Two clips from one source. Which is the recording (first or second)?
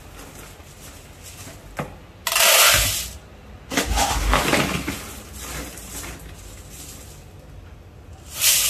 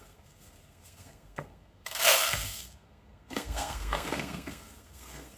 first